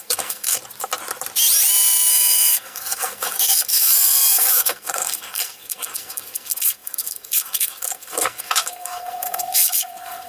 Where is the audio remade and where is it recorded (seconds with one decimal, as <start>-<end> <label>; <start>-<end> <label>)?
0.0-0.6 remade; 0.6-2.1 recorded; 2.1-10.3 remade